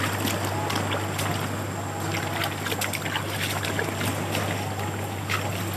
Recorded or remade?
recorded